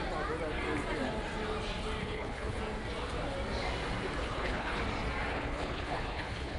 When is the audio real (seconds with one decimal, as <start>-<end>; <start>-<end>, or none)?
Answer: 0.0-2.0; 2.6-4.2; 4.8-5.3

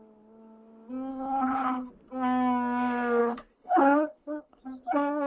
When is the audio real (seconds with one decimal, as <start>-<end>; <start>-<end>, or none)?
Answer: 0.0-1.1; 1.9-3.2; 4.6-5.3

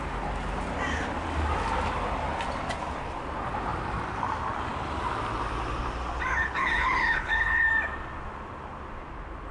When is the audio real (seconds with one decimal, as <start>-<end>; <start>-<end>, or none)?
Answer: 0.0-6.3; 7.7-9.5

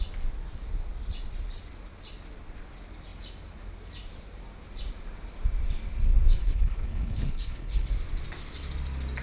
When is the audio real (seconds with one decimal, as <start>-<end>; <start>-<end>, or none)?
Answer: 0.0-6.4; 7.9-9.2

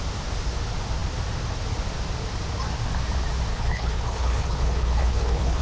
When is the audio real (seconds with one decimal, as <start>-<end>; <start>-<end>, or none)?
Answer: 0.0-3.5

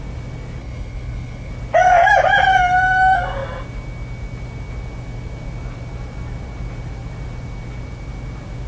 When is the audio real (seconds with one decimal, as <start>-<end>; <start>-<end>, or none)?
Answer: 0.0-0.6; 1.5-8.7

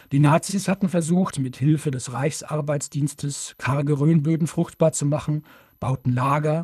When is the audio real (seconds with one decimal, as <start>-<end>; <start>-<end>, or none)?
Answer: none